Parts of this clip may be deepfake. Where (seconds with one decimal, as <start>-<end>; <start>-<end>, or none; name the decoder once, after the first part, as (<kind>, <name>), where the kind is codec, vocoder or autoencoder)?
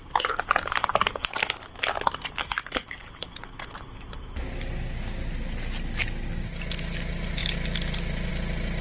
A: none